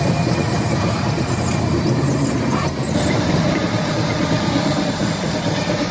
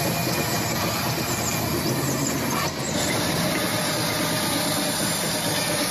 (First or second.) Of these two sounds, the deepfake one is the first